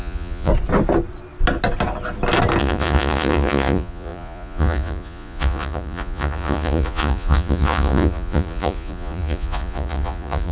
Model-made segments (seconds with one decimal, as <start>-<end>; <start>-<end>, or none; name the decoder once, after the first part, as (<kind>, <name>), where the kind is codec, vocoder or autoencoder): 0.0-0.5 (vocoder, Vocos); 2.6-10.5